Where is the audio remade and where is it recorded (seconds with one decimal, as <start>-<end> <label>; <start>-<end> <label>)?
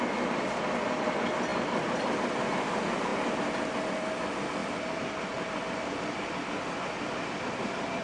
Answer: 0.0-1.5 remade; 1.5-2.6 recorded; 2.6-3.1 remade; 3.1-3.8 recorded; 3.8-8.0 remade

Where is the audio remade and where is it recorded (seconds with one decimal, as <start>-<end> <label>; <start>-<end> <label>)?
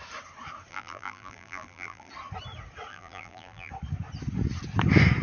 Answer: 0.0-0.7 recorded; 0.7-2.1 remade; 2.1-2.9 recorded; 2.9-3.7 remade; 3.7-5.2 recorded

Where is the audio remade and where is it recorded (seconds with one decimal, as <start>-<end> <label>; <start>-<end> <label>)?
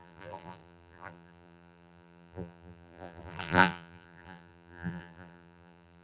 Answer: 0.0-6.0 remade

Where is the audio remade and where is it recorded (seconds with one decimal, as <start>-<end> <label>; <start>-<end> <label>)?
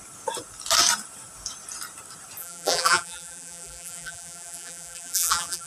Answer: 0.0-2.4 recorded; 2.4-5.7 remade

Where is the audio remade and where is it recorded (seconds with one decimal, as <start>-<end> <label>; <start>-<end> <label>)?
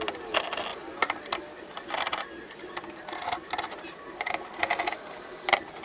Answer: 0.0-5.8 recorded